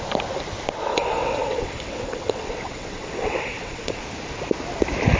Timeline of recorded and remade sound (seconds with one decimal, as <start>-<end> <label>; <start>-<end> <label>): 0.0-0.9 recorded; 0.9-4.0 remade; 4.0-5.2 recorded